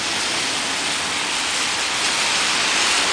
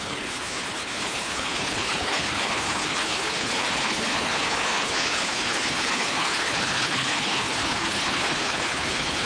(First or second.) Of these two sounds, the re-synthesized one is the second